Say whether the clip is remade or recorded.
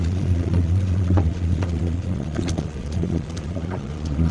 remade